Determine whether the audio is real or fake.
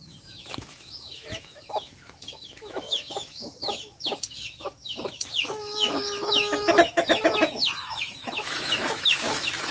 fake